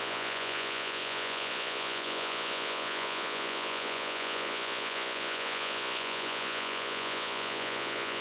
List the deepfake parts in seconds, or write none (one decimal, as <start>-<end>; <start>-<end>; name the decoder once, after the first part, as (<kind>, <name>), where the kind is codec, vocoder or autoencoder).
0.0-8.2 (vocoder, Vocos)